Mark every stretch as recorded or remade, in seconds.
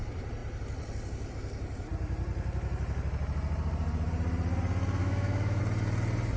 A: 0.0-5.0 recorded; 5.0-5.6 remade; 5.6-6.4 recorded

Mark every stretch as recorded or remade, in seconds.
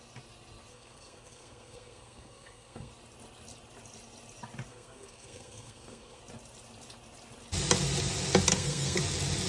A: 0.0-0.7 recorded; 0.7-2.9 remade; 2.9-4.7 recorded; 4.7-6.2 remade; 6.2-8.5 recorded; 8.5-9.0 remade; 9.0-9.5 recorded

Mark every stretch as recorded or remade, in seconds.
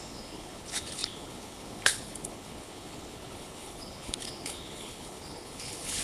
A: 0.0-6.0 remade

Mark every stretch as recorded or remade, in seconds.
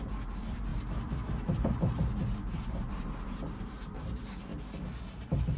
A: 0.0-4.5 remade; 4.5-5.1 recorded; 5.1-5.6 remade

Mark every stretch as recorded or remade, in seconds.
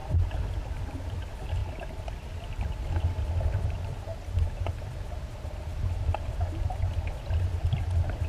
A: 0.0-8.3 recorded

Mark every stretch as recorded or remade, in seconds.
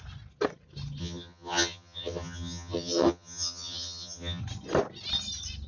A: 0.0-1.0 recorded; 1.0-4.4 remade; 4.4-5.7 recorded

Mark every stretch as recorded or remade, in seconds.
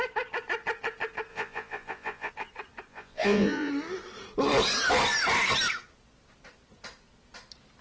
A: 0.0-1.3 recorded; 1.3-2.3 remade; 2.3-2.9 recorded; 2.9-3.7 remade; 3.7-7.8 recorded